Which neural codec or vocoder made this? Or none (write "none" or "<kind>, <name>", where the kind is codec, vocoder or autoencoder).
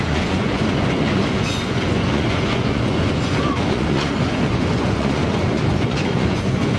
vocoder, Vocos